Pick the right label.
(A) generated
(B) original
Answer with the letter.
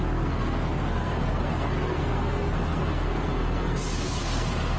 A